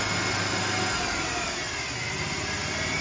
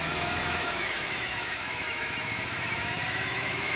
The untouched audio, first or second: first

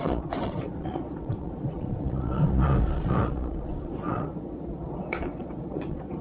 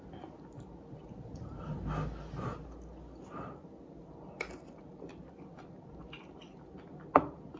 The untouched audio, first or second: second